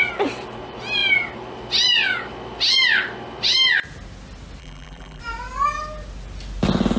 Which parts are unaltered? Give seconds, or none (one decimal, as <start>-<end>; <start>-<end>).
0.0-4.6; 5.2-7.0